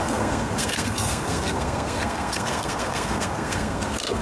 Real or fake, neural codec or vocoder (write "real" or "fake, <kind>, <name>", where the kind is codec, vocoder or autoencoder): fake, codec, SNAC